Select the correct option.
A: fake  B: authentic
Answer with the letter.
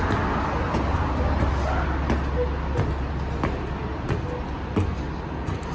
B